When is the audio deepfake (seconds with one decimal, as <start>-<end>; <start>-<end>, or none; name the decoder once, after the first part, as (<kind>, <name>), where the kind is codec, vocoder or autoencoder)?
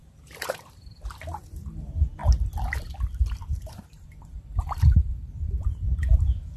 0.0-2.2 (vocoder, BigVGAN v2); 3.2-6.6